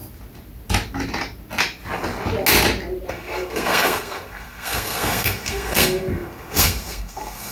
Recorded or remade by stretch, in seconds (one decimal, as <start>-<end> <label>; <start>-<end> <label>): 0.0-3.1 recorded; 3.1-7.5 remade